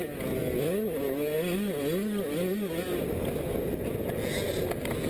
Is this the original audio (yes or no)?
yes